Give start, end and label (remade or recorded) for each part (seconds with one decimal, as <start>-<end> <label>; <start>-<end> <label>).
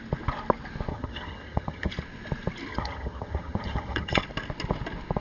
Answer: 0.0-0.9 recorded; 0.9-1.9 remade; 1.9-2.7 recorded; 2.7-4.2 remade; 4.2-5.2 recorded